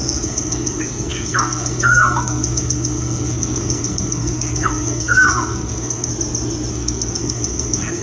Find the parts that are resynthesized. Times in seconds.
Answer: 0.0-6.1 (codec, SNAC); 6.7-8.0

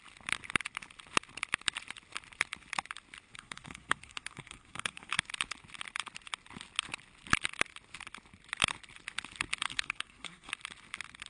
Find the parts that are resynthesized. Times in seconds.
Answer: 3.3-5.2 (codec, SNAC); 9.7-10.5

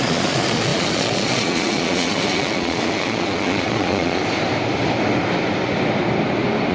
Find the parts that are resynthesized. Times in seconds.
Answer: 0.0-4.2 (vocoder, Vocos)

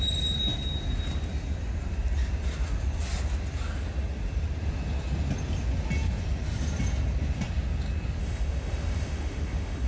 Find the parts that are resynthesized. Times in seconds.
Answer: 8.2-9.9 (autoencoder, DAC-VAE)

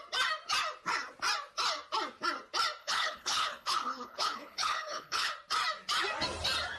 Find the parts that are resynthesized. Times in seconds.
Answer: 2.8-5.3 (codec, HILCodec)

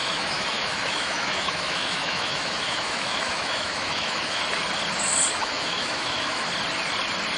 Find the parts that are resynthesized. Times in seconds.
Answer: 0.0-4.4 (autoencoder, DAC-VAE); 5.4-6.5